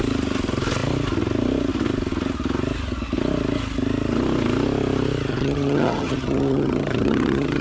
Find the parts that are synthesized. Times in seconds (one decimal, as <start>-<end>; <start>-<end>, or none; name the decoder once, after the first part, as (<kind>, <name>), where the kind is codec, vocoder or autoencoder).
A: 5.3-7.6 (vocoder, HiFi-GAN)